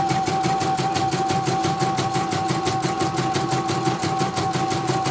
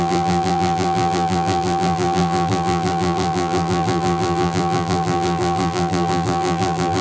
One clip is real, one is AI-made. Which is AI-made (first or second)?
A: second